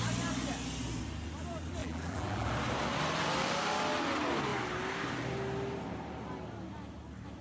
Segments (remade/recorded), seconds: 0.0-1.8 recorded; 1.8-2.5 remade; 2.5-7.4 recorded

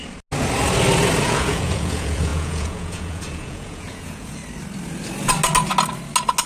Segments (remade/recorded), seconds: 0.0-1.2 recorded; 1.2-4.4 remade; 4.4-6.5 recorded

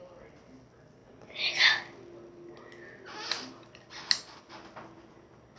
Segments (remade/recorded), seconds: 0.0-5.6 recorded

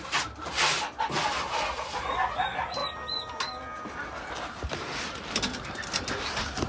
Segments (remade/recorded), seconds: 0.0-6.7 recorded